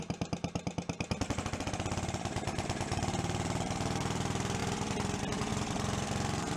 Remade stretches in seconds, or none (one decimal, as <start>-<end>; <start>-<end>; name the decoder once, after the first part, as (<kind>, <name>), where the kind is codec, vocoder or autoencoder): 0.0-4.6 (vocoder, BigVGAN v2); 5.5-6.6